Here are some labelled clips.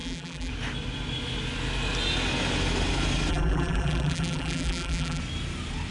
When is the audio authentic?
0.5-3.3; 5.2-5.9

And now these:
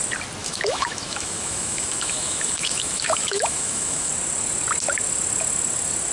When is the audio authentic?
0.0-0.4; 4.1-6.1

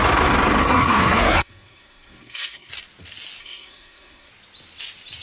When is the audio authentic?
0.0-0.6; 2.7-3.4; 4.3-5.2

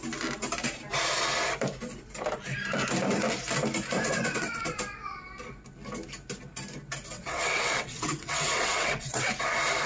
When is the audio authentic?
0.0-4.0; 4.8-7.1; 9.3-9.9

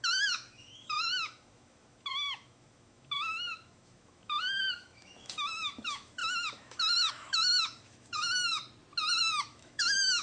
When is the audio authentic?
8.6-9.2

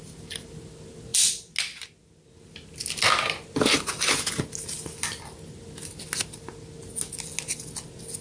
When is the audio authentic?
0.0-8.2

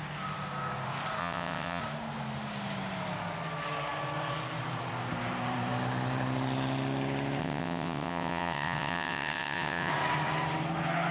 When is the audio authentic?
0.0-1.2; 1.8-7.4; 9.9-11.1

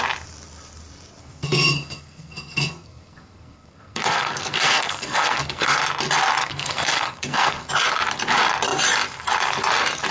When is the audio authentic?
0.0-1.2; 5.8-6.4; 7.7-10.1